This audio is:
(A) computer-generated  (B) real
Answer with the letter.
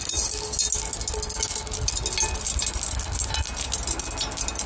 B